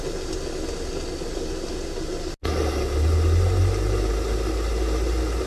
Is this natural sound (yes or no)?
yes